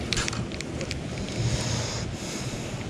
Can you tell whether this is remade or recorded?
recorded